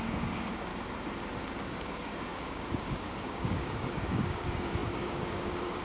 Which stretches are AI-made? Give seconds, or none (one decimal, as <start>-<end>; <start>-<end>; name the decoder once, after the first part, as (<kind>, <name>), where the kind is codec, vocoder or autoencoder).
0.0-0.7 (codec, DAC); 1.6-5.8